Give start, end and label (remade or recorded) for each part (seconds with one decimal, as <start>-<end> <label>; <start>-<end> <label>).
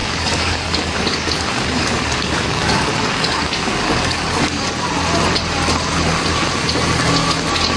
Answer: 0.0-4.7 remade; 4.7-7.8 recorded